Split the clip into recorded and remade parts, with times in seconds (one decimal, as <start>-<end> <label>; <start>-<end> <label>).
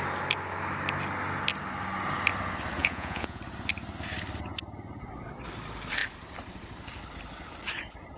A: 0.0-2.8 recorded; 2.8-3.4 remade; 3.4-8.2 recorded